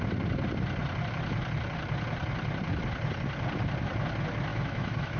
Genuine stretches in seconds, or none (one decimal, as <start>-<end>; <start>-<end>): 0.0-4.5